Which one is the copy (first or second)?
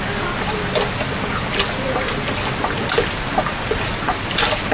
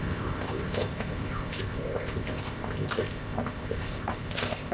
second